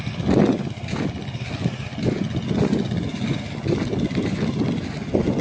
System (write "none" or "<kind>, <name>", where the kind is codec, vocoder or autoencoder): none